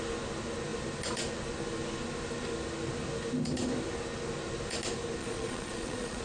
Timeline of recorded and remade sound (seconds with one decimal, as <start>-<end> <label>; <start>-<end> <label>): 0.0-5.2 recorded; 5.2-6.2 remade